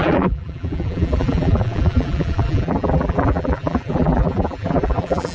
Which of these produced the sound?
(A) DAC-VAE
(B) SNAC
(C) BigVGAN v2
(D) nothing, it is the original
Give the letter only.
C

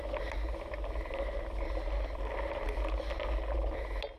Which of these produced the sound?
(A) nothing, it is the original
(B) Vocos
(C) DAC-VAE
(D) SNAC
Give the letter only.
A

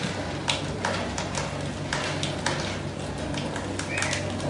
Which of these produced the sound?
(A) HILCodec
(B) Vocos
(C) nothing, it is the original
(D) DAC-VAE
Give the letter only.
C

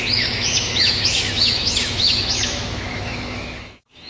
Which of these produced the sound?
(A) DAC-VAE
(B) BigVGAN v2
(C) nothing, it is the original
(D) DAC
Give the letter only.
A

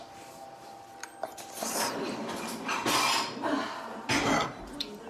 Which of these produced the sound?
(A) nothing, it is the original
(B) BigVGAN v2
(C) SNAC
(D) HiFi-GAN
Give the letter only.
A